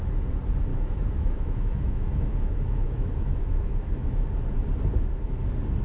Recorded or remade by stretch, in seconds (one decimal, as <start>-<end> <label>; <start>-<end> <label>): 0.0-0.7 recorded; 0.7-4.2 remade; 4.2-5.8 recorded